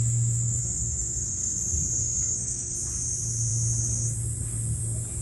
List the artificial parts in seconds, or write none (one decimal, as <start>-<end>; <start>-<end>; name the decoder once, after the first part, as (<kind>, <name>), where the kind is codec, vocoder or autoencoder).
0.6-1.6 (codec, SNAC); 2.0-2.7